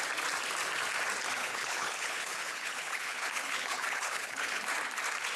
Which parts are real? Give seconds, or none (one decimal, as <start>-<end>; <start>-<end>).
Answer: 0.0-1.4; 4.6-5.4

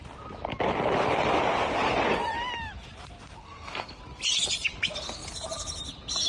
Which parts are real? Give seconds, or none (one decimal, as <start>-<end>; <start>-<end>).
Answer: 0.0-3.4; 4.0-6.3